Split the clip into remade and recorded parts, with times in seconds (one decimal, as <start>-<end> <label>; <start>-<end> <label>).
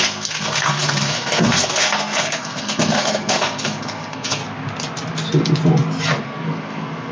0.0-4.4 remade; 4.4-6.2 recorded; 6.2-7.1 remade